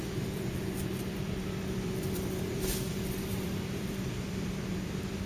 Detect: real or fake fake